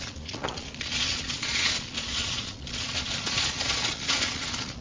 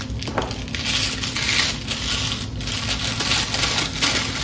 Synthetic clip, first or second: first